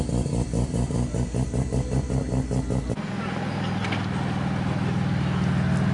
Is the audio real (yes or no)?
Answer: yes